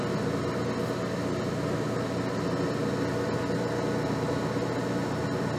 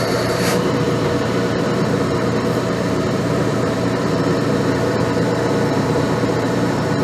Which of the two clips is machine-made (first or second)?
second